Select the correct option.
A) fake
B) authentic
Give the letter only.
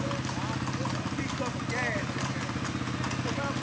B